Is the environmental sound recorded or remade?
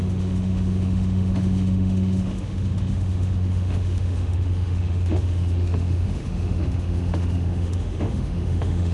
remade